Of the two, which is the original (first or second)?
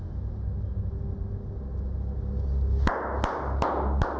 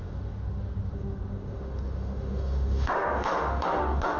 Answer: first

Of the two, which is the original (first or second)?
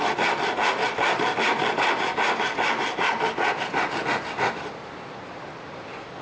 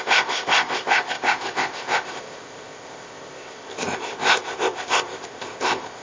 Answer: first